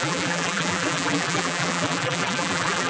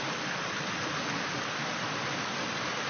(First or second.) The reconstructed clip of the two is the first